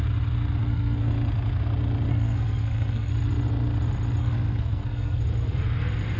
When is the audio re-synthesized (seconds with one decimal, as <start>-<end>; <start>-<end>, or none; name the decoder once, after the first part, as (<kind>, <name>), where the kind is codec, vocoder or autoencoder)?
0.6-1.1 (codec, SNAC); 2.1-3.1; 4.2-5.2